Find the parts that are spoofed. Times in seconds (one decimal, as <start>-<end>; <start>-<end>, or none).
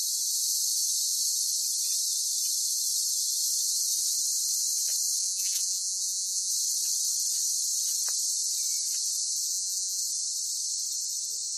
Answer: 5.2-6.5; 9.5-10.0